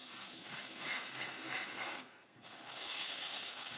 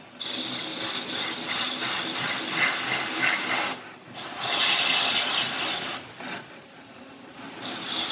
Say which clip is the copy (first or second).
first